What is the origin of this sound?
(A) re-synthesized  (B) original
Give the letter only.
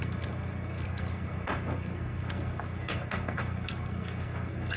A